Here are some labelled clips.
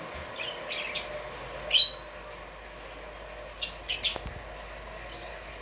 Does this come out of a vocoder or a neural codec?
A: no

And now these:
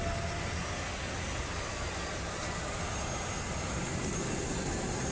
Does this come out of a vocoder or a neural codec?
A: no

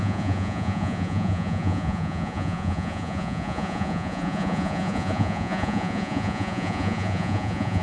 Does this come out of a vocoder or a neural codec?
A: yes